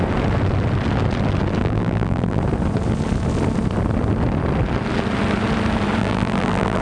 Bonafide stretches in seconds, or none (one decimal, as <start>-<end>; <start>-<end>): 0.0-1.6; 2.4-6.0